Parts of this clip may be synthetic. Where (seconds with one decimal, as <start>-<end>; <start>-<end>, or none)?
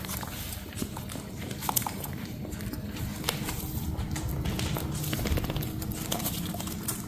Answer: 0.0-3.1; 6.1-7.1